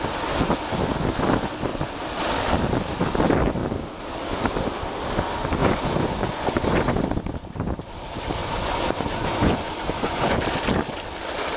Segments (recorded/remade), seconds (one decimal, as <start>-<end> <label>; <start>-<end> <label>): 0.0-5.6 recorded; 5.6-7.0 remade; 7.0-8.4 recorded; 8.4-10.4 remade; 10.4-11.6 recorded